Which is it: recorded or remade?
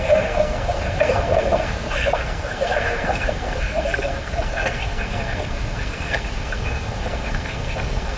remade